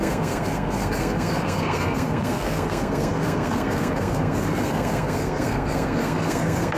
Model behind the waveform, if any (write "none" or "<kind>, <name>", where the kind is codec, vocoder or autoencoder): codec, SNAC